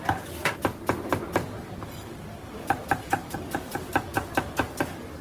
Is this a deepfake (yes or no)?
no